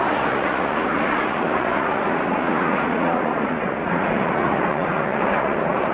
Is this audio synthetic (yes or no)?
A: yes